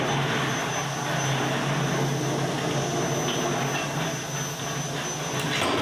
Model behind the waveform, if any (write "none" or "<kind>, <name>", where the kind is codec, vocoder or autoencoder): none